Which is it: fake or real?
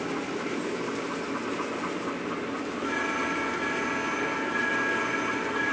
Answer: real